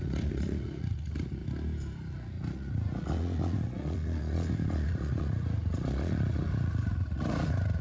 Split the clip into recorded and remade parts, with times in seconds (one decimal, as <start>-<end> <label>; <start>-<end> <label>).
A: 0.0-1.4 remade; 1.4-2.1 recorded; 2.1-7.8 remade